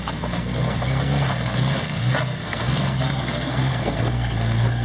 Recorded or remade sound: remade